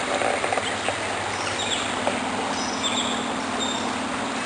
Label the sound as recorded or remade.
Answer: recorded